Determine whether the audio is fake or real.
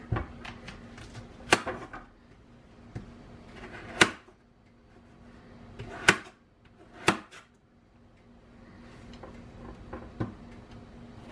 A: real